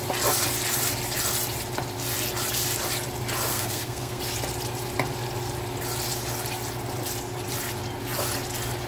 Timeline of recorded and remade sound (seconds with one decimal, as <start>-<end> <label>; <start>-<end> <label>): 0.0-3.5 recorded; 3.5-4.2 remade; 4.2-8.9 recorded